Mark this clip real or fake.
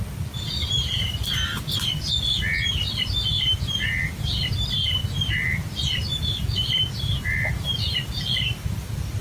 real